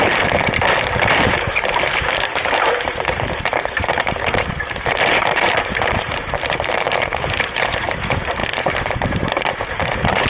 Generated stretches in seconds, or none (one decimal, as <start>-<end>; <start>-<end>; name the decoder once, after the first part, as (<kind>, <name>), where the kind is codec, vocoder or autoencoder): 0.0-10.3 (vocoder, BigVGAN v2)